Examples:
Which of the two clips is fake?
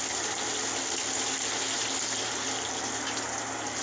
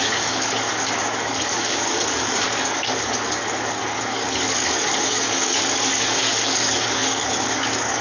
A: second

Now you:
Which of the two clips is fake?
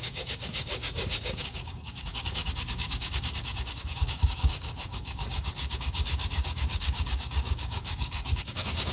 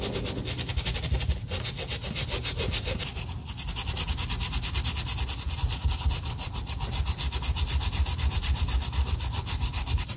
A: first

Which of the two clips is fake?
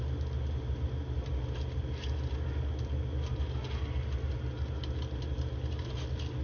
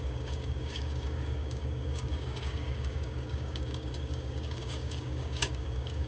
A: second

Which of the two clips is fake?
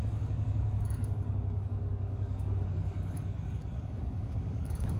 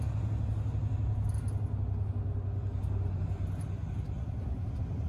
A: first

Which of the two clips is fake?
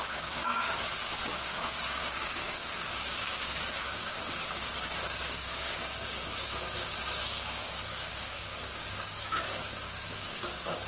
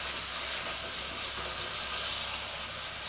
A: first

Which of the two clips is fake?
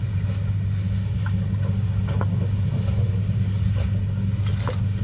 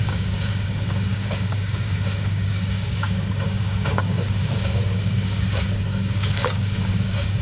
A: second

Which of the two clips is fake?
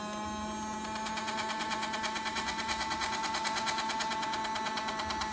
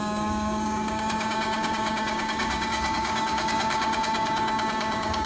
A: second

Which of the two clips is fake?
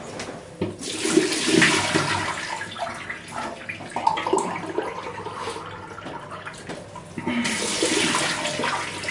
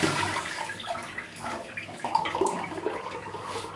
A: second